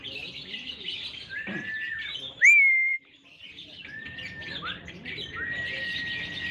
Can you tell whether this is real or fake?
fake